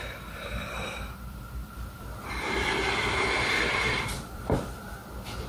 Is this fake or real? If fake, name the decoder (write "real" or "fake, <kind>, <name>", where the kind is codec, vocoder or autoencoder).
fake, vocoder, BigVGAN v2